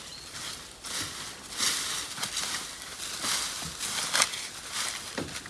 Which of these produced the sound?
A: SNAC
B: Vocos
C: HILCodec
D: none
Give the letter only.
D